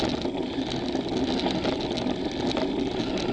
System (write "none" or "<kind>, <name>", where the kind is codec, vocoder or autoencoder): none